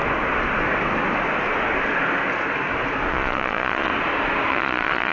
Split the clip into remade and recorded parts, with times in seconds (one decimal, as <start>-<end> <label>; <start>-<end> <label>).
0.0-3.1 recorded; 3.1-3.9 remade; 3.9-4.5 recorded; 4.5-5.1 remade